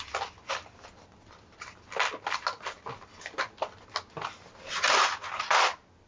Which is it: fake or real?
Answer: real